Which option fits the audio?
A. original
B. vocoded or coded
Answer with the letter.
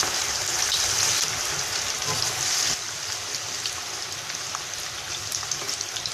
B